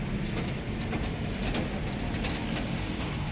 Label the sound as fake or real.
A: real